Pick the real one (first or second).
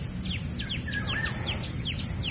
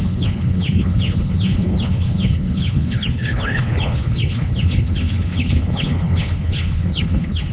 first